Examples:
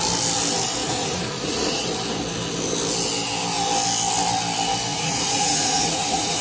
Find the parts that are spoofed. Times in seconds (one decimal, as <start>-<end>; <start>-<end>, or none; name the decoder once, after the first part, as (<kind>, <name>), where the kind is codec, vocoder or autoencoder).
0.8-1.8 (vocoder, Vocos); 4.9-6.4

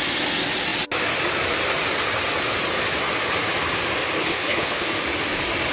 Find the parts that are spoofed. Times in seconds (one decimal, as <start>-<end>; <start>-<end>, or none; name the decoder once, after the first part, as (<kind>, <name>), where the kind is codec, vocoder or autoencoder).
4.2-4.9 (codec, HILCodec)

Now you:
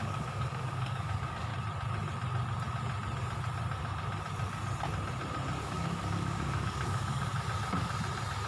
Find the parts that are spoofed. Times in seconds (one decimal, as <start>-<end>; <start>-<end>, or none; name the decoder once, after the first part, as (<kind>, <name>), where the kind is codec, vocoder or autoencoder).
0.0-1.5 (codec, DAC); 5.6-7.3